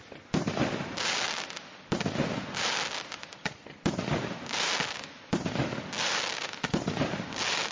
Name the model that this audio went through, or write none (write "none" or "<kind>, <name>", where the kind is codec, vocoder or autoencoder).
none